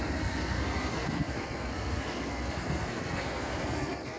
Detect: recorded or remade remade